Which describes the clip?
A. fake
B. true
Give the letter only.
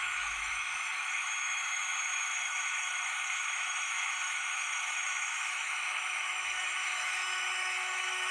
A